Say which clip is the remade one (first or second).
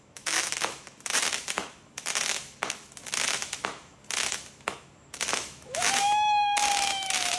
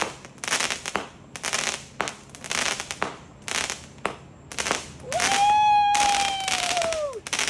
first